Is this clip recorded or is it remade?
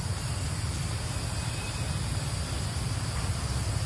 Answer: recorded